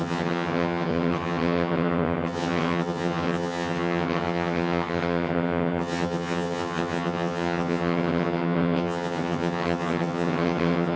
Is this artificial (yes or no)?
yes